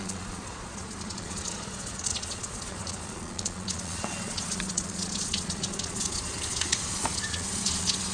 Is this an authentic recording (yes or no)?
no